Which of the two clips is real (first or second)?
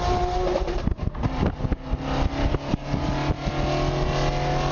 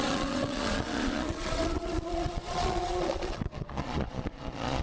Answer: first